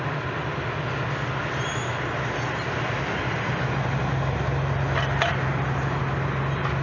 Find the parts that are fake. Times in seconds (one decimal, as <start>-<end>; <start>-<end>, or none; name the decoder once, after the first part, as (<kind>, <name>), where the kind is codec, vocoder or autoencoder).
none